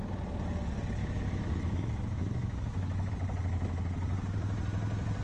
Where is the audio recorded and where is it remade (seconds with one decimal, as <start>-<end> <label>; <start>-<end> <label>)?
0.0-1.0 recorded; 1.0-3.1 remade; 3.1-5.2 recorded